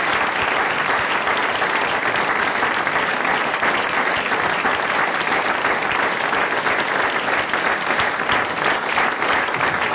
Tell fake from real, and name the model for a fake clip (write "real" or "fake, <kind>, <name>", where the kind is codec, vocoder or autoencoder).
real